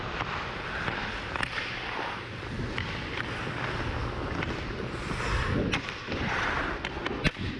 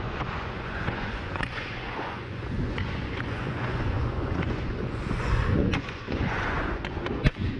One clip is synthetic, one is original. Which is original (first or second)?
first